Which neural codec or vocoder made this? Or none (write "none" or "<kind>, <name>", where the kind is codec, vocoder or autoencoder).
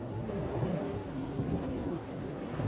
codec, SNAC